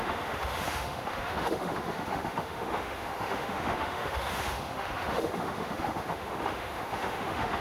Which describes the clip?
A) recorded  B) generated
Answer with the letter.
B